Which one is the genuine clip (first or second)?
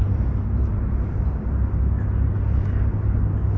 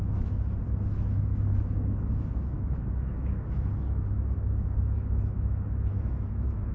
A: first